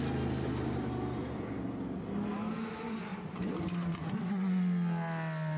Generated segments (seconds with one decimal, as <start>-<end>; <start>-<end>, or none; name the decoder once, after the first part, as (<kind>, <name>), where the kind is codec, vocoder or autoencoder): none